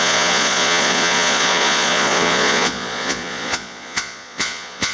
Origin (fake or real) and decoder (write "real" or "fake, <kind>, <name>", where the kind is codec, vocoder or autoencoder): fake, vocoder, Vocos